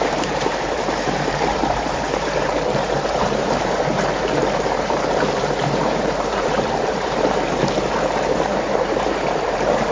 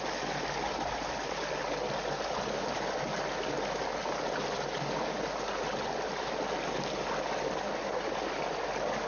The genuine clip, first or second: second